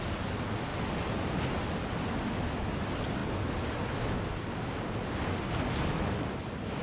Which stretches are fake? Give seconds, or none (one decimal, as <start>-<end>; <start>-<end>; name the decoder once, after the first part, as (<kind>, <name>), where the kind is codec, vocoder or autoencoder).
0.7-2.3 (vocoder, BigVGAN v2)